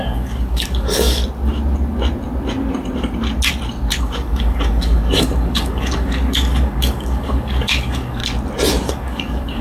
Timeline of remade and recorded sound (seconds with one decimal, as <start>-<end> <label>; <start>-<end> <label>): 0.0-1.2 remade; 1.2-4.0 recorded; 4.0-8.2 remade; 8.2-8.9 recorded; 8.9-9.6 remade